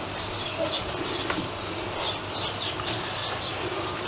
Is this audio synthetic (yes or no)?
no